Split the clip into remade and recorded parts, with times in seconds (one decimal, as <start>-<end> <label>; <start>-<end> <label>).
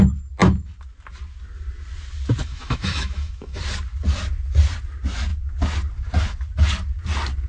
0.0-2.4 recorded; 2.4-3.6 remade; 3.6-7.5 recorded